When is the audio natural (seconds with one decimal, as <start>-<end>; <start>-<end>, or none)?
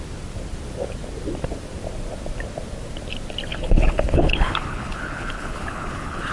0.0-3.5